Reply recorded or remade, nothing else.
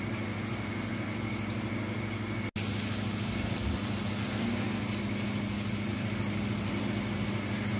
recorded